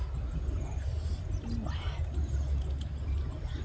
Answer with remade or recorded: recorded